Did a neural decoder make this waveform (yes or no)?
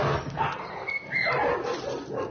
no